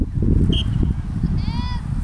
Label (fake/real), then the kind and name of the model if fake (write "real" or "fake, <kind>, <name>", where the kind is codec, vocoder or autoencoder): real